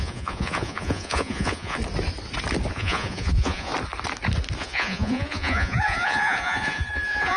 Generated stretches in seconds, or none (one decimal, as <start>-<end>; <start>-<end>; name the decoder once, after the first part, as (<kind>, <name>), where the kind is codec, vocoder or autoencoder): 0.0-1.8 (vocoder, Vocos); 2.7-3.7; 4.6-7.4